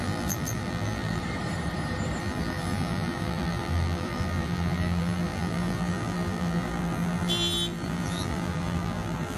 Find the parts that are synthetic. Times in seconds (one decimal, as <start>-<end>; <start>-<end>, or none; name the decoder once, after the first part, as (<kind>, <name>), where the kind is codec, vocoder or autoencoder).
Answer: 0.0-1.2 (vocoder, BigVGAN v2); 2.2-9.4